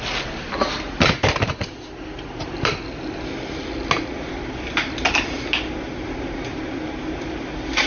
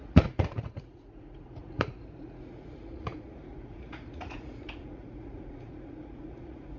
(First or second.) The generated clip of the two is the second